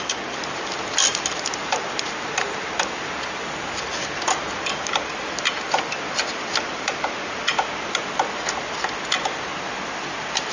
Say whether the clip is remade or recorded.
recorded